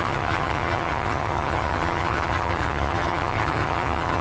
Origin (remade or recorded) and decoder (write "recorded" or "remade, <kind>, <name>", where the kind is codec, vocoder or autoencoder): remade, vocoder, HiFi-GAN